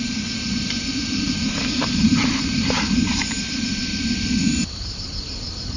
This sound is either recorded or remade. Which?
remade